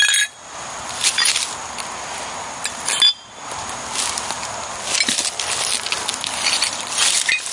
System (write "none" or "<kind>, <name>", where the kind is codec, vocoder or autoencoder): none